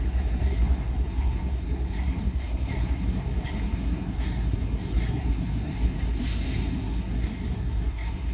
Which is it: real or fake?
fake